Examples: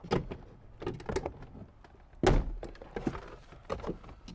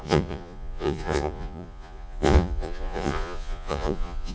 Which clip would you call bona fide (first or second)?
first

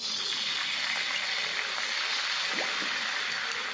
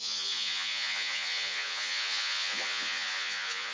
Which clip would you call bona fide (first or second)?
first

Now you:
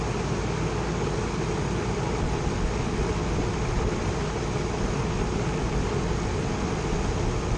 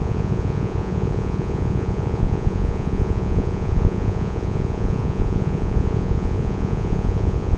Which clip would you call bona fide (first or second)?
first